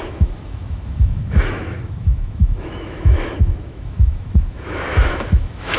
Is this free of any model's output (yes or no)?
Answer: no